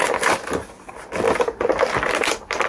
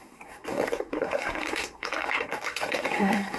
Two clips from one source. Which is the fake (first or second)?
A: second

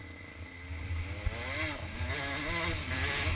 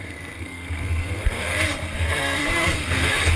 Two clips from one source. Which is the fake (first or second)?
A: second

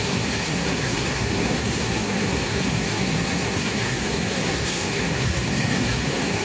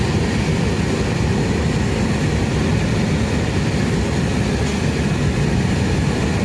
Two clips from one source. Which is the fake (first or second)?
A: first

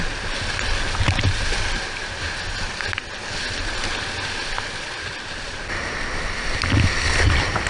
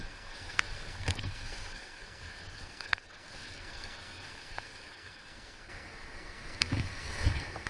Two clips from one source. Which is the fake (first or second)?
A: second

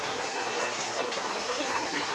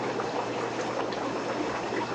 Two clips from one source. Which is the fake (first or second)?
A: first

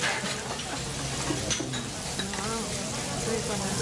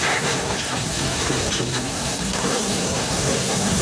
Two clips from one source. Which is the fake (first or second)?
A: second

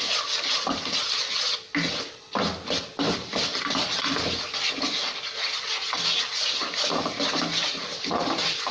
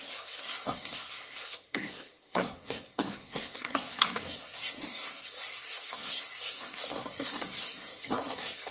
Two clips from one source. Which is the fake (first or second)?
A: second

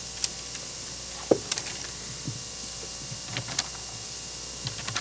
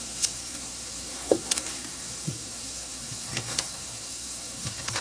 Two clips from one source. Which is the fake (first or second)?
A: second